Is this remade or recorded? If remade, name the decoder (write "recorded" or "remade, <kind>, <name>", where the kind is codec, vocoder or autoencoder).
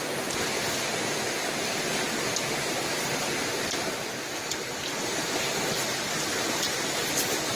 recorded